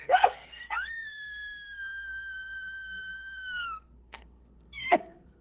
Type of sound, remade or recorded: remade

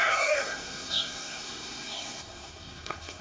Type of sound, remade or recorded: remade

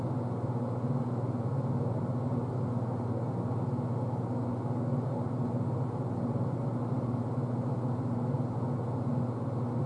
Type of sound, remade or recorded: recorded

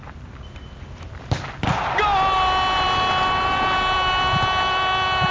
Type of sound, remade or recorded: recorded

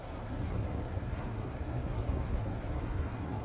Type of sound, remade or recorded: remade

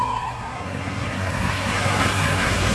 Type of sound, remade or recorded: remade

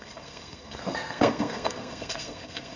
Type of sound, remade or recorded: remade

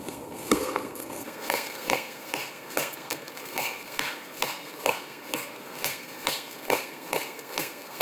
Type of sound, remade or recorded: remade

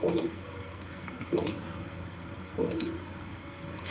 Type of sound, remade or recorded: remade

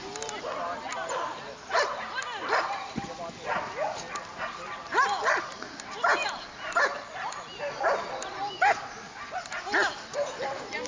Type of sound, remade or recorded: recorded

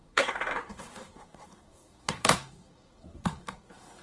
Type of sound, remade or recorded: remade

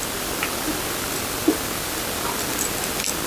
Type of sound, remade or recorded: recorded